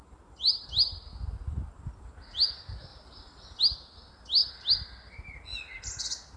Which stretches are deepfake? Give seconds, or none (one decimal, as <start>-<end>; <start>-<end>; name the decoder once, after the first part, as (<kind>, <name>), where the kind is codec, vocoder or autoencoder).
none